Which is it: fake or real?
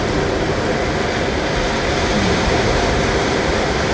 real